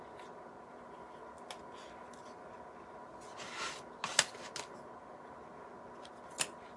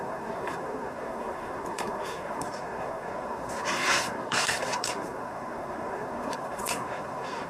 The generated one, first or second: second